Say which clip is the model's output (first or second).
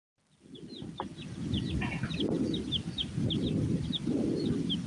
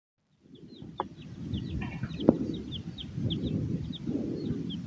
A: first